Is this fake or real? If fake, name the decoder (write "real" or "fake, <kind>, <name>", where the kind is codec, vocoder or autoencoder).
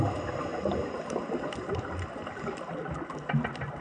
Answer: real